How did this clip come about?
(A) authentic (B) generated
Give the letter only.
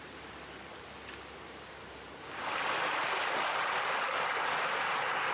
A